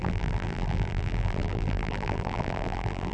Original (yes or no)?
no